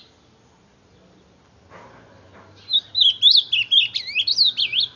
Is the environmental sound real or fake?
real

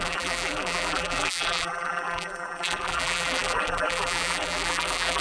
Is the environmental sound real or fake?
fake